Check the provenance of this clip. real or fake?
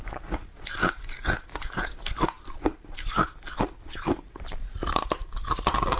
real